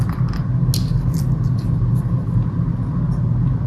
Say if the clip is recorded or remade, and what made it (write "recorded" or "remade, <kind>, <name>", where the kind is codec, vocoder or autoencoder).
recorded